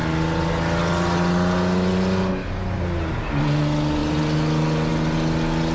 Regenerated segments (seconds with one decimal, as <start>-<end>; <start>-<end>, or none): none